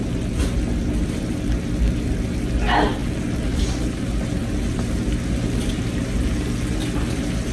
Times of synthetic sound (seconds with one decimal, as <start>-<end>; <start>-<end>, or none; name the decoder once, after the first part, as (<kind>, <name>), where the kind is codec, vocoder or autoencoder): none